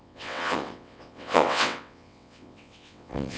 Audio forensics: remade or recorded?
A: remade